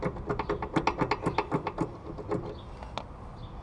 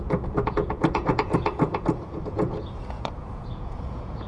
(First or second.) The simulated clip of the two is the second